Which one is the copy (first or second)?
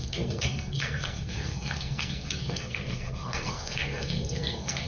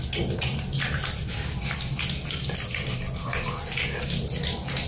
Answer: first